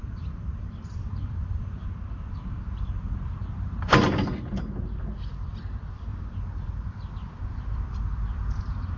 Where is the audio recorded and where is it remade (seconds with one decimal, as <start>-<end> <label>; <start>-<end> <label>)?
0.0-9.0 remade